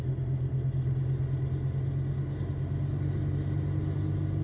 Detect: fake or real real